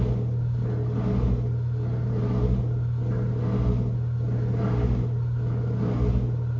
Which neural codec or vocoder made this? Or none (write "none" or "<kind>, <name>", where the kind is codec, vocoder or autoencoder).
none